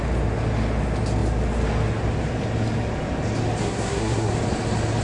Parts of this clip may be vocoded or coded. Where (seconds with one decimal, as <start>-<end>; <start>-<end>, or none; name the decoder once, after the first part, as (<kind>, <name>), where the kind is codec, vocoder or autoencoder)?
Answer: 3.6-4.3 (codec, SNAC)